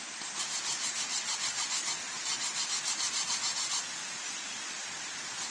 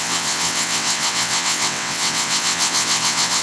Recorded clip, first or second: first